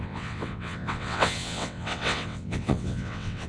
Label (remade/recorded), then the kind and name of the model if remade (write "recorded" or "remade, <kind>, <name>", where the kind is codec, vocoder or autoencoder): remade, vocoder, WaveNeXt